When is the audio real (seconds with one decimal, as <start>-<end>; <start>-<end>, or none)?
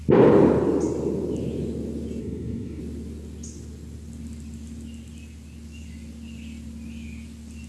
0.0-2.2; 2.8-7.7